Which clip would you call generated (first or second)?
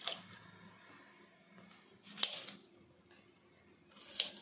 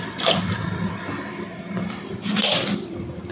second